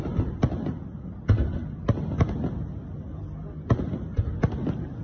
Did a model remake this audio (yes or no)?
no